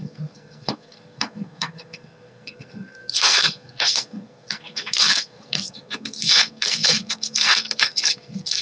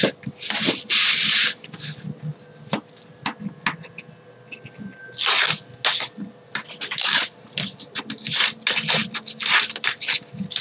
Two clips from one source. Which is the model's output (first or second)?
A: first